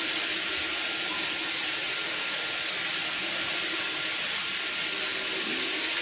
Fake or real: real